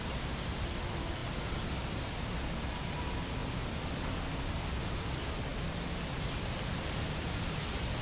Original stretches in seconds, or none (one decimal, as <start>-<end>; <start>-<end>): 0.0-8.0